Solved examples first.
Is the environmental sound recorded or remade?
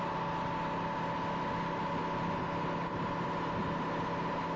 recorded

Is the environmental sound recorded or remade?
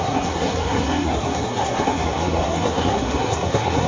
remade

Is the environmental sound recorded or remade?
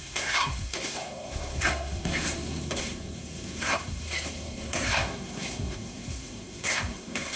remade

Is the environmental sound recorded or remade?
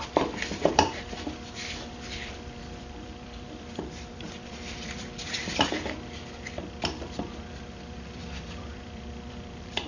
remade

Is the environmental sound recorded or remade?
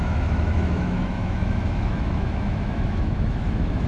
remade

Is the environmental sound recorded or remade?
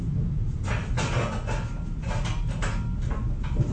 recorded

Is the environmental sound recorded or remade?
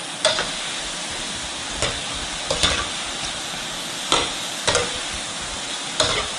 recorded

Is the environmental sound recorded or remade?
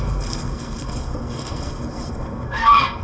remade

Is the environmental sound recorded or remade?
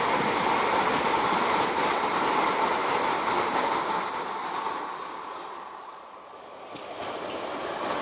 recorded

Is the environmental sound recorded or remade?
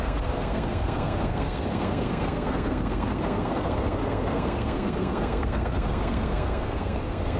remade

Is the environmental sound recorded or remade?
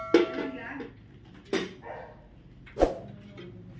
recorded